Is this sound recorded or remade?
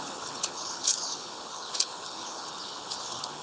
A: remade